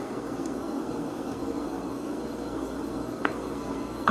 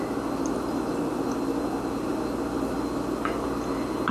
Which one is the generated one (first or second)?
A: first